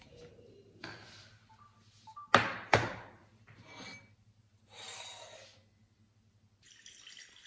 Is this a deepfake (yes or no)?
no